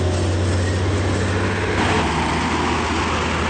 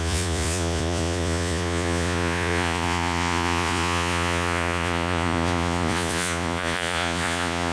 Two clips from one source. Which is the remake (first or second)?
second